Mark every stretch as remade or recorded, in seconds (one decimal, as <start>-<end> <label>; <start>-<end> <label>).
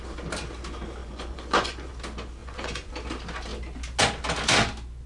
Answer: 0.0-1.0 recorded; 1.0-1.9 remade; 1.9-2.4 recorded; 2.4-2.9 remade; 2.9-5.1 recorded